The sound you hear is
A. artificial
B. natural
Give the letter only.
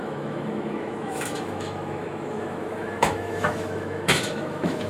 A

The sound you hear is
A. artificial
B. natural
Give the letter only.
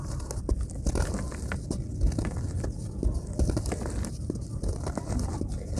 B